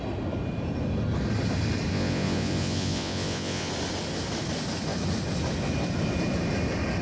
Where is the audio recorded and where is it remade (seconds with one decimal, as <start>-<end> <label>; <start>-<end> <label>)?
0.0-1.9 recorded; 1.9-3.7 remade; 3.7-7.0 recorded

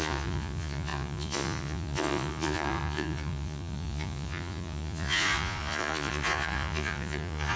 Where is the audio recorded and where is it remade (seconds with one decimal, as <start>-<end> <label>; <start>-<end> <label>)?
0.0-7.6 remade